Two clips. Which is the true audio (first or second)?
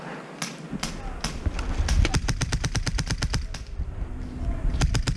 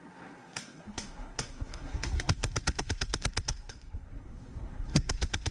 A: first